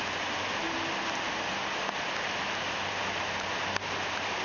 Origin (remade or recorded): recorded